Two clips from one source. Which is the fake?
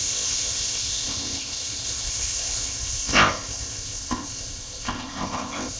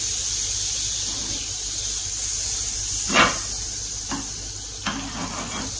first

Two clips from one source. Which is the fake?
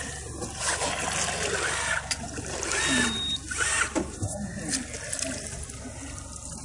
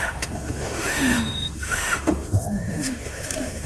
second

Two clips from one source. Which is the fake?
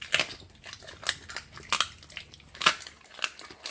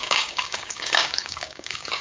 second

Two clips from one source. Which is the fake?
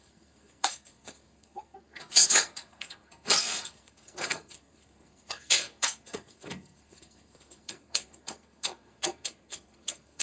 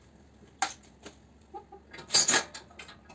first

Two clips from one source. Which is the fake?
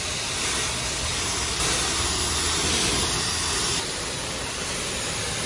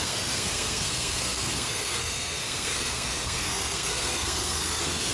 second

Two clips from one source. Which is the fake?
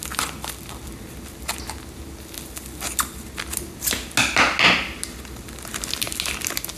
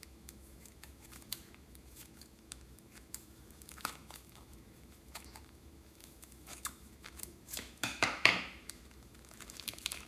second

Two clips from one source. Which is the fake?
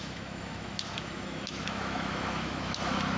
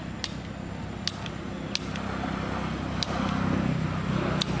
first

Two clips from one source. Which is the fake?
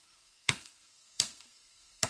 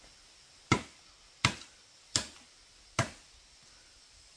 first